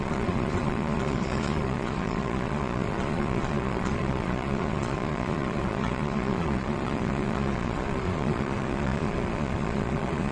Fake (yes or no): yes